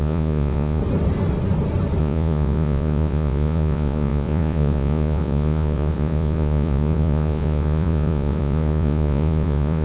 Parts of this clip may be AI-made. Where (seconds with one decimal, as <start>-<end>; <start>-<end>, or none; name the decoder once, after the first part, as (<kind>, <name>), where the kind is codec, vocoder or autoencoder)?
0.0-0.8 (vocoder, Vocos); 2.0-9.8